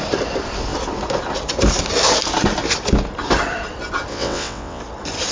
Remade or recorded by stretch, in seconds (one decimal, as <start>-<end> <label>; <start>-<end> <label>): 0.0-4.1 recorded; 4.1-4.8 remade; 4.8-5.3 recorded